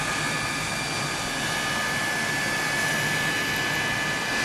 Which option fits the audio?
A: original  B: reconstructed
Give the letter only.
A